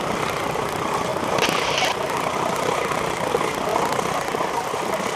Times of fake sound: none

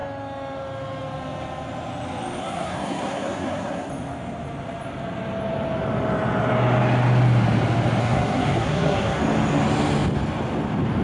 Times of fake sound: 2.4-3.9 (codec, SNAC); 8.0-9.2

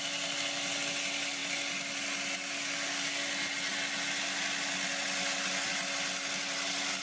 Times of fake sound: none